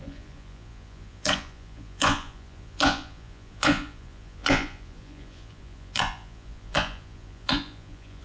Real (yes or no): no